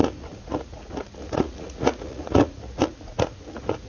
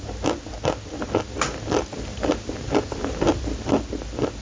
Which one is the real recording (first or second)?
second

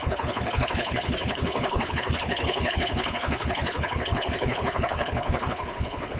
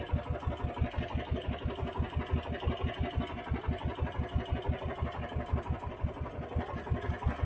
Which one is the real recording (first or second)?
second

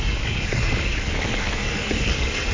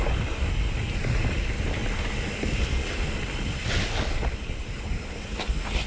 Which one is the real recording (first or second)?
second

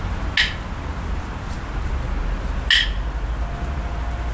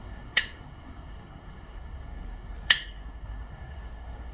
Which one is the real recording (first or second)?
first